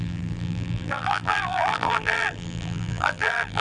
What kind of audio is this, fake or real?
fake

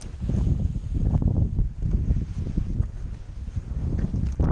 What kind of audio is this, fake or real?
real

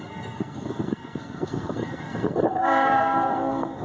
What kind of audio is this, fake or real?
fake